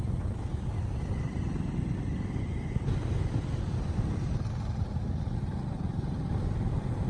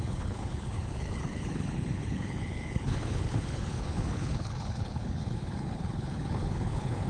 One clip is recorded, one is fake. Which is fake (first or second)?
second